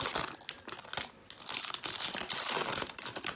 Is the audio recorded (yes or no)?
yes